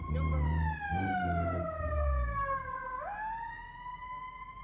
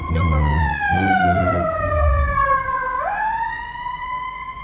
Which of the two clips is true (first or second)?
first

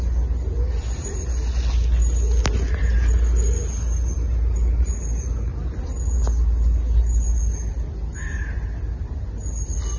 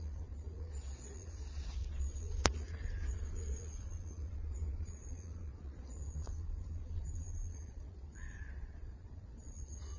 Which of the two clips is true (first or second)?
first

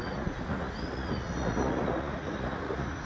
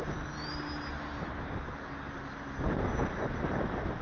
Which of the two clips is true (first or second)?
second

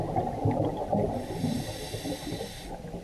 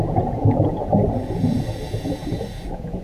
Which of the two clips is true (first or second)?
first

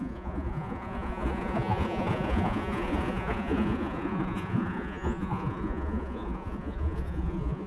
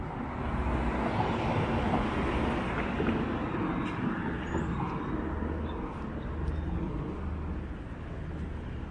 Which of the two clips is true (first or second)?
second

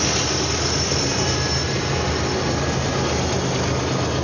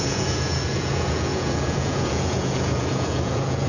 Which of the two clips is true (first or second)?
first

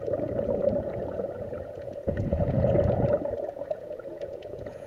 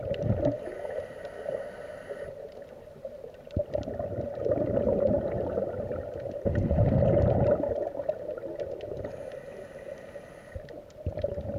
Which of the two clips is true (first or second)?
second